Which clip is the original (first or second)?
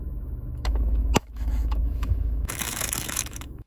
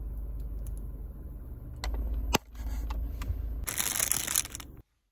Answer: second